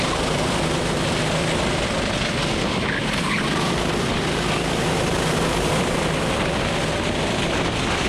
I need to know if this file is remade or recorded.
recorded